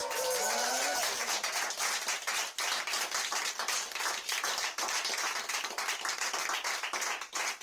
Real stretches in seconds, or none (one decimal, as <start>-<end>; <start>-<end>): 0.0-7.6